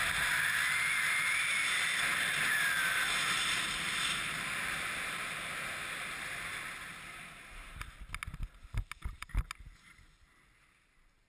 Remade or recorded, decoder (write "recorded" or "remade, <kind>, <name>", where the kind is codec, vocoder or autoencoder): recorded